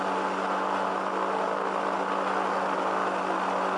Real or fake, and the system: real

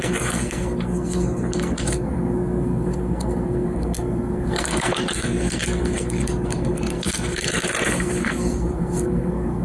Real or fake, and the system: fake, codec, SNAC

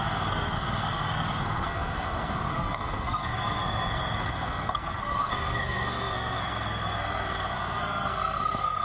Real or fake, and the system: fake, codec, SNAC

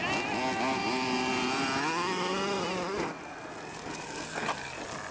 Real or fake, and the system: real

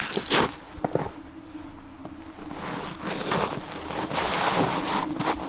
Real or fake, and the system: real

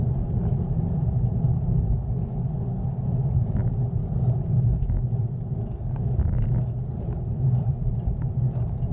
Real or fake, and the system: real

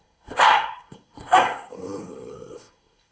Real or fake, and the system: fake, codec, SNAC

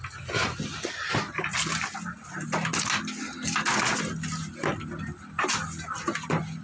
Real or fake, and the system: real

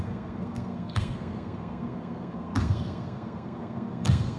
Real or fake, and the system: fake, codec, SNAC